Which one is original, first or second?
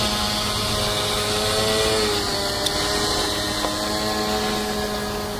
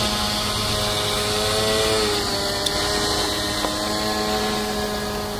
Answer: first